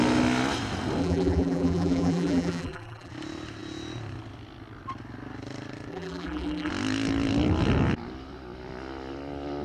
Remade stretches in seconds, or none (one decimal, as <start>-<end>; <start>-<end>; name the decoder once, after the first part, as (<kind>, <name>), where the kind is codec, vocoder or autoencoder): 1.0-3.1 (vocoder, BigVGAN v2); 5.9-6.7